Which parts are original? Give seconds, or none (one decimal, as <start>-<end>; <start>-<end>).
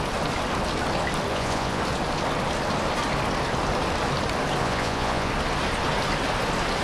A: 0.0-1.3; 1.8-4.6; 5.3-6.8